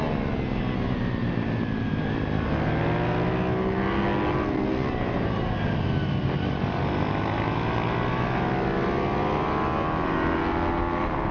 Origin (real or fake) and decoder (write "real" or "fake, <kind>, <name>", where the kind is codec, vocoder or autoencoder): real